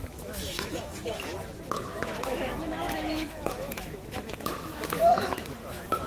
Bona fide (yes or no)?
no